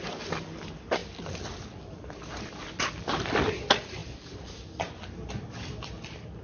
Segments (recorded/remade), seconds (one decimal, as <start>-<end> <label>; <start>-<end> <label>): 0.0-6.4 recorded